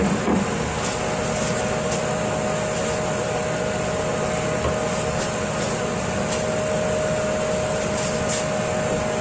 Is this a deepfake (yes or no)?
no